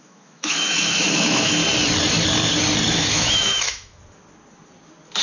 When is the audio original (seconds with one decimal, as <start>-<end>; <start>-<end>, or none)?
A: 1.6-2.9; 4.0-5.2

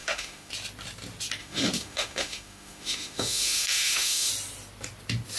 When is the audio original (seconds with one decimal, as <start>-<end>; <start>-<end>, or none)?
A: 0.5-1.4; 4.3-5.4

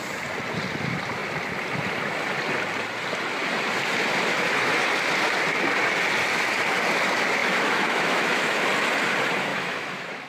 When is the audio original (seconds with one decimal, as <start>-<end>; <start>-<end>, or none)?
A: 0.0-7.4; 8.7-9.5

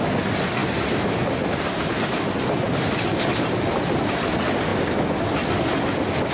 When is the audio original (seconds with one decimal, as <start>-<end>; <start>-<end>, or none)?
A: 0.0-6.3